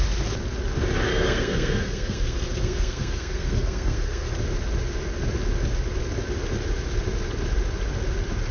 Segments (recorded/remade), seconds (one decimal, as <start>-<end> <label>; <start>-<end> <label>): 0.0-1.1 recorded; 1.1-4.3 remade; 4.3-8.5 recorded

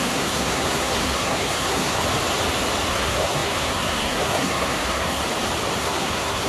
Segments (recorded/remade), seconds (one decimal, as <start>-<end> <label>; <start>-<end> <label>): 0.0-2.0 remade; 2.0-2.9 recorded; 2.9-5.2 remade; 5.2-5.8 recorded; 5.8-6.5 remade